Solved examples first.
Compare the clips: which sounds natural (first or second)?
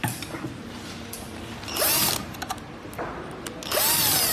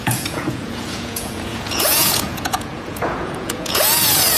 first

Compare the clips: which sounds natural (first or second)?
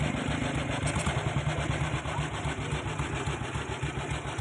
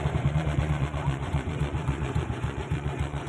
first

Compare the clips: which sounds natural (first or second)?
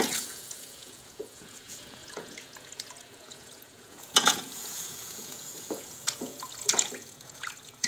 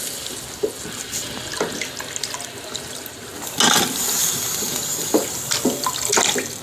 second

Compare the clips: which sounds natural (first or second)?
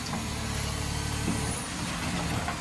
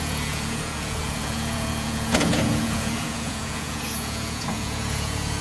first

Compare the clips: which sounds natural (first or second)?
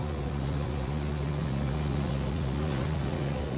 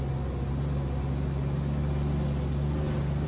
second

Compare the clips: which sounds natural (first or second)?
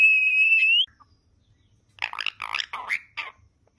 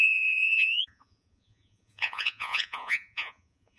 first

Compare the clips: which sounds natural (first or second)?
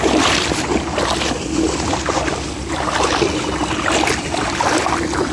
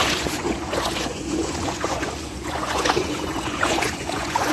first